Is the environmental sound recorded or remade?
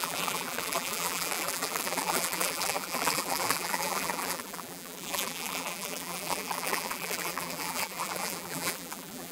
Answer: remade